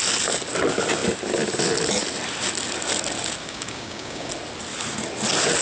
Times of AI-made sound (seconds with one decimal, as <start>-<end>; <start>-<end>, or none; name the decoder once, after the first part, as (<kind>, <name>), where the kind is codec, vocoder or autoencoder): 3.4-4.3 (codec, DAC)